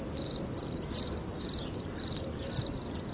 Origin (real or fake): real